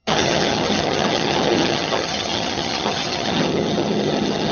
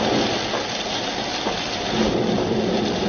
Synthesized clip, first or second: first